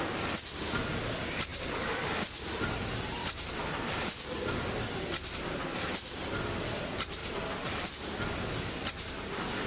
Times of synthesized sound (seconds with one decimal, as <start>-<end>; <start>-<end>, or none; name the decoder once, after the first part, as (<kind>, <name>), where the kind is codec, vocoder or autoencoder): 1.5-2.7 (vocoder, BigVGAN v2); 7.2-7.9